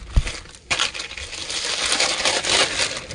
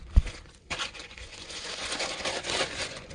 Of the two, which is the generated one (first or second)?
second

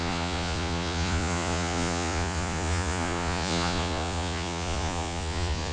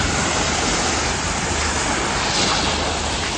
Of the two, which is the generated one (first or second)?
first